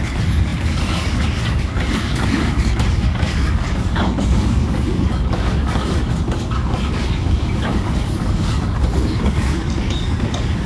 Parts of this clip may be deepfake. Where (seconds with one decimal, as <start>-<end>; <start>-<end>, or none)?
0.0-10.7